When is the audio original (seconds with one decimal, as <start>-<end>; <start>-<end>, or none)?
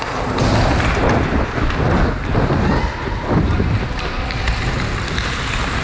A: 0.0-5.8